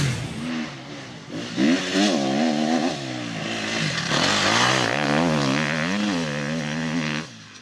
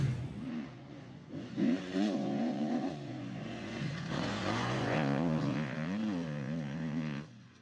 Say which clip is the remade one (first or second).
second